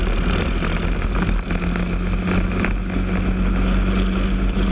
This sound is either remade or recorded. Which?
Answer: recorded